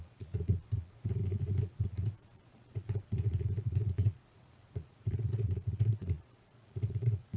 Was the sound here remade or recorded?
remade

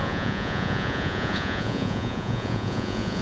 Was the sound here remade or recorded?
remade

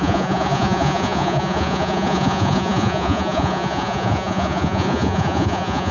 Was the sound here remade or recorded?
remade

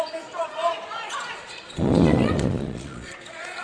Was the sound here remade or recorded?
remade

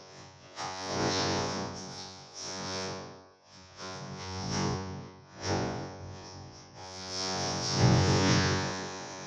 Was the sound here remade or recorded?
remade